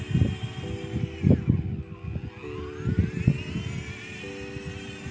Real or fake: real